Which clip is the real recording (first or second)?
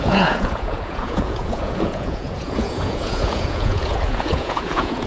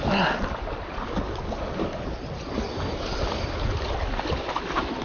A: second